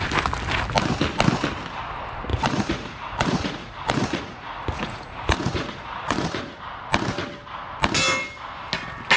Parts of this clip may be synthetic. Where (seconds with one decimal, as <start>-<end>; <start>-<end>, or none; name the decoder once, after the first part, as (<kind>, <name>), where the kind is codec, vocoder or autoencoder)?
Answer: 2.3-6.6 (vocoder, Vocos)